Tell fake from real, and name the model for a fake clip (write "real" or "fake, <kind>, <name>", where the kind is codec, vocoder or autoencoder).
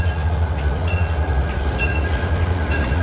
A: fake, vocoder, Vocos